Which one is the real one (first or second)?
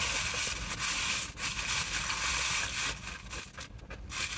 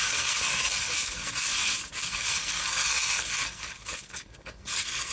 first